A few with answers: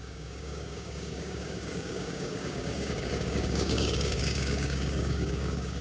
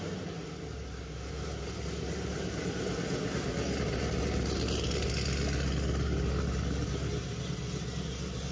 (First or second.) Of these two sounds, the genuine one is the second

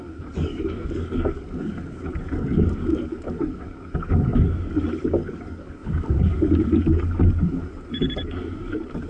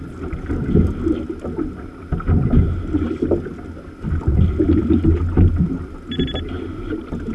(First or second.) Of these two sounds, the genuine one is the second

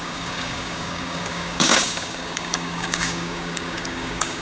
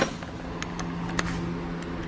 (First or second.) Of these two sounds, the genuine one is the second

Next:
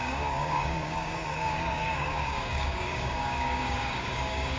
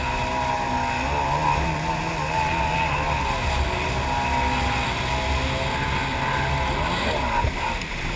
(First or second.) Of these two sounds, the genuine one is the second